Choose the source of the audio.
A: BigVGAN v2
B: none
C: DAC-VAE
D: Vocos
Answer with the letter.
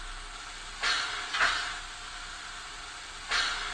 B